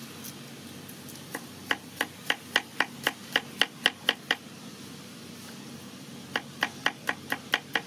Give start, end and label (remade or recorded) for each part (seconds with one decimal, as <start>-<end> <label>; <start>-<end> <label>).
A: 0.0-7.9 recorded